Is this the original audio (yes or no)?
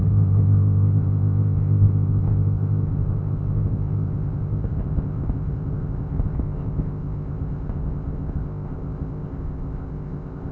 no